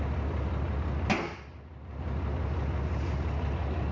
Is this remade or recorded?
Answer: recorded